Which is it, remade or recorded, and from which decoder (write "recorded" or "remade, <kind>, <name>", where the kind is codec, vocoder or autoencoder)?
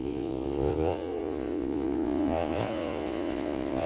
remade, vocoder, Vocos